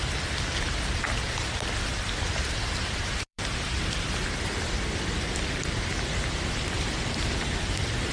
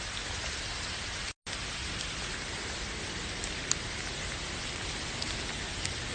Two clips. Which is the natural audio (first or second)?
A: second